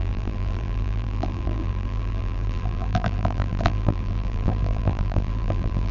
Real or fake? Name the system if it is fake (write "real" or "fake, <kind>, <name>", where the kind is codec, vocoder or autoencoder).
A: fake, vocoder, BigVGAN v2